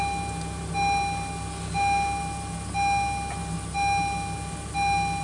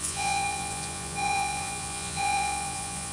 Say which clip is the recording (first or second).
first